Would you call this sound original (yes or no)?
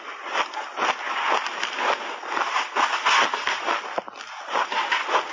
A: yes